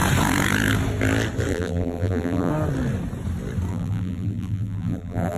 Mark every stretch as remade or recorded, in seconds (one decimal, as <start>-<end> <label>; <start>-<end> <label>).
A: 0.0-1.5 recorded; 1.5-2.5 remade; 2.5-3.7 recorded; 3.7-5.4 remade